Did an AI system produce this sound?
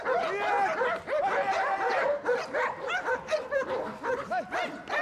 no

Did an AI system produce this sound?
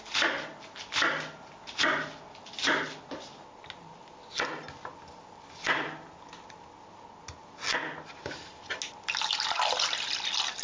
no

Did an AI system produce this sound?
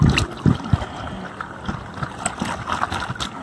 no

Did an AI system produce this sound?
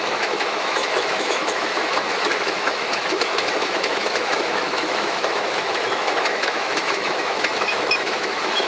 yes